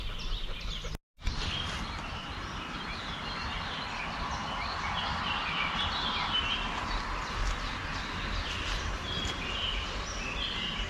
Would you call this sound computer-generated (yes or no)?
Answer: no